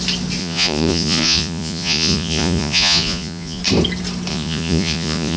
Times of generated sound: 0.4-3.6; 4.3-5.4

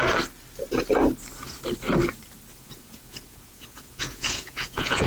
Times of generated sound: 2.5-5.1

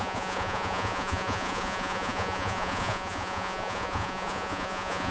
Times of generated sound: 0.0-5.1

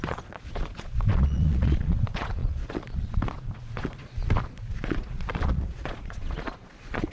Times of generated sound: 0.0-7.1

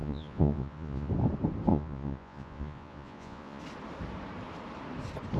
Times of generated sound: 0.0-1.1; 1.7-3.6

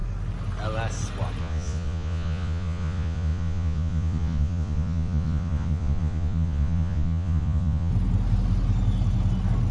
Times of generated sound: 1.4-7.9

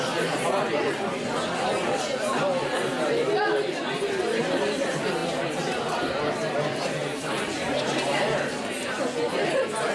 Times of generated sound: none